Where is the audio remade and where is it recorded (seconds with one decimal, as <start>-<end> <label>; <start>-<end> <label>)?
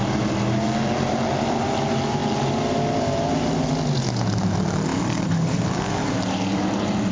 0.0-4.9 recorded; 4.9-7.1 remade